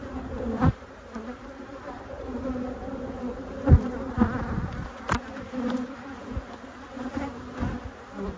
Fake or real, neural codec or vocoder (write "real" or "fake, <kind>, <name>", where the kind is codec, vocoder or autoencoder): fake, vocoder, BigVGAN v2